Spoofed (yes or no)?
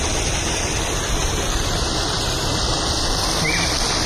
no